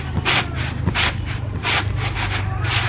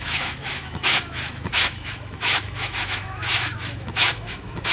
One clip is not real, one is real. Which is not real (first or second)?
second